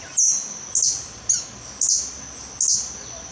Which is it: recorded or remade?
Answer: recorded